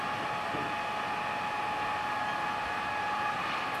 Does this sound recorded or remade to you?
recorded